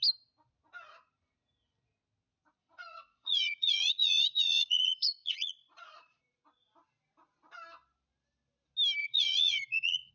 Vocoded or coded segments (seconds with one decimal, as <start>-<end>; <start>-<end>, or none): 2.6-6.2; 9.0-10.1